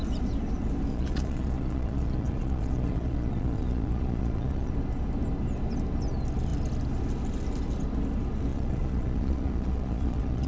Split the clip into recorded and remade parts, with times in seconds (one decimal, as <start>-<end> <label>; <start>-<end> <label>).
0.0-0.9 recorded; 0.9-4.7 remade; 4.7-8.5 recorded; 8.5-10.5 remade